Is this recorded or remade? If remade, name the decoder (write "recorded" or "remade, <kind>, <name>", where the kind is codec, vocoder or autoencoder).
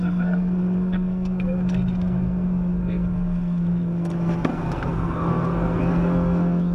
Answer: remade, codec, SNAC